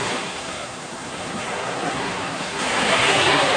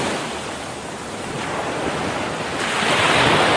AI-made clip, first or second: first